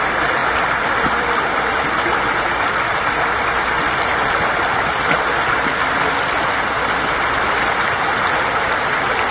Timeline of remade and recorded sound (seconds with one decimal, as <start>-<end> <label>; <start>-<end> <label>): 0.0-9.3 recorded